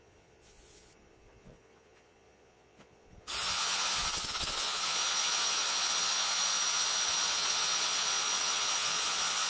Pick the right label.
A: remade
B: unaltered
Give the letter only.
A